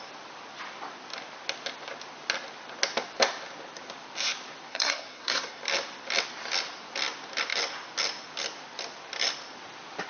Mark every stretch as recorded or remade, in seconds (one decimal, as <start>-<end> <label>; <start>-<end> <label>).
0.0-4.7 recorded; 4.7-5.6 remade; 5.6-10.1 recorded